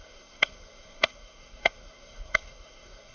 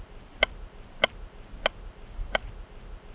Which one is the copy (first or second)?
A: first